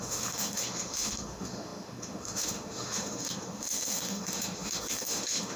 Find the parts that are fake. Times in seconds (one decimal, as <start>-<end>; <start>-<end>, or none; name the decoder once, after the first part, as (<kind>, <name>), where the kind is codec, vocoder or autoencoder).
0.0-5.6 (autoencoder, DAC-VAE)